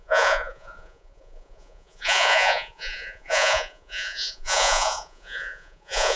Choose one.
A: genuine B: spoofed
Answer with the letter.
B